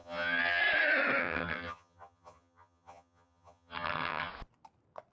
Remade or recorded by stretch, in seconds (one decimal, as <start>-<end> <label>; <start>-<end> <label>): 0.0-0.6 remade; 0.6-1.2 recorded; 1.2-4.3 remade; 4.3-5.1 recorded